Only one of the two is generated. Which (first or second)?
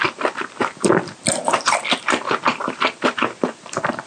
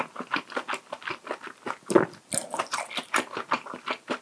first